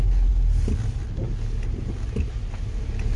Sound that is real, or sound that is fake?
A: real